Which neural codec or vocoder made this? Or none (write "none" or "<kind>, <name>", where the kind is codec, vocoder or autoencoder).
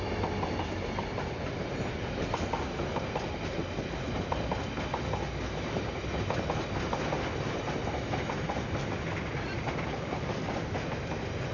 none